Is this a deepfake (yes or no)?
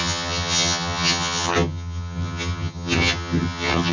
yes